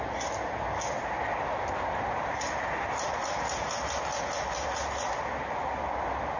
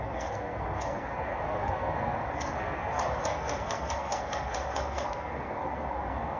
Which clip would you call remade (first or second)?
second